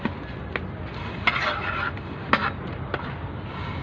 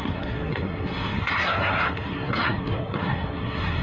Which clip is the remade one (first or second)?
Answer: second